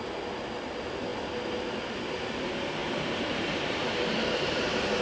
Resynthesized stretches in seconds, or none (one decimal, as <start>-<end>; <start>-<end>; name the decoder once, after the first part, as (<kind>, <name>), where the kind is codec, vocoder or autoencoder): 2.8-5.0 (vocoder, BigVGAN v2)